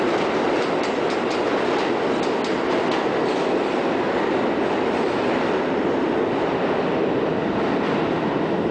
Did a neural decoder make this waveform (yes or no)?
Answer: no